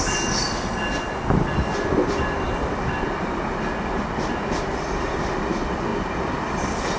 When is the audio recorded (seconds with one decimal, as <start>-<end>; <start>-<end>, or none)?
0.0-7.0